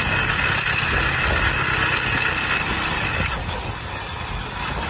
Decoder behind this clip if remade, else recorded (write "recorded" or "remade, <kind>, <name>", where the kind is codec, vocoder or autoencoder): recorded